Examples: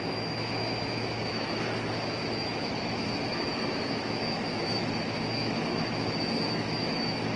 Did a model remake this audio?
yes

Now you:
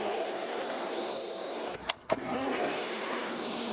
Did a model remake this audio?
yes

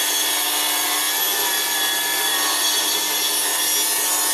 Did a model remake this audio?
no